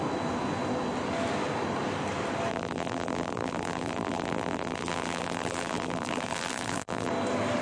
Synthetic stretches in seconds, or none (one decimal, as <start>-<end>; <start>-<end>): 2.5-7.1